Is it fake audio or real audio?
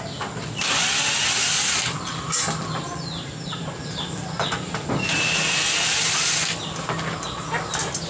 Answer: real